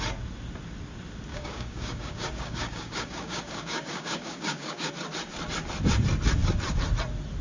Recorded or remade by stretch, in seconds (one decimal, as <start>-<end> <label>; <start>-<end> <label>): 0.0-1.3 recorded; 1.3-4.9 remade; 4.9-7.4 recorded